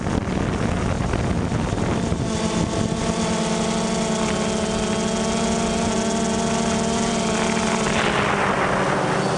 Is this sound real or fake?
real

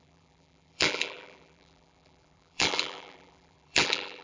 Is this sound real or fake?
fake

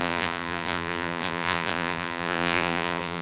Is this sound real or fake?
fake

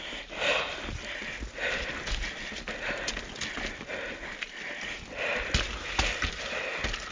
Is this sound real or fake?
real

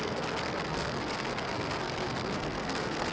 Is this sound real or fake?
fake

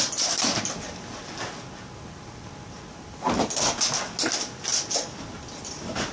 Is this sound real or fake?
real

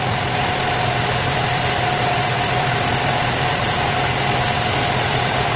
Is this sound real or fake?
fake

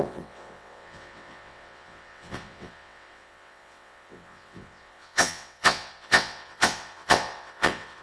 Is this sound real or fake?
fake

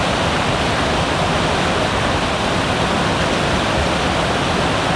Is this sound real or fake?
real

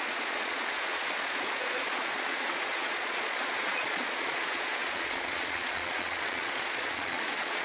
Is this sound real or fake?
fake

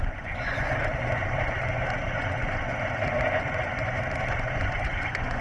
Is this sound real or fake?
fake